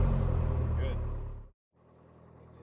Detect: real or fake real